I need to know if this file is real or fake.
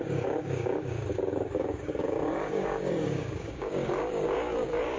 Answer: fake